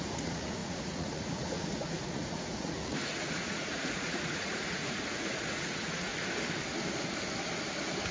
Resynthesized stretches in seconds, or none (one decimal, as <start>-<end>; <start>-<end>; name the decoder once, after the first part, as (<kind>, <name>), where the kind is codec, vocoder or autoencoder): 0.0-6.1 (vocoder, Vocos)